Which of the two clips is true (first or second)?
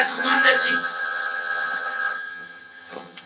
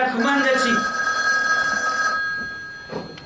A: second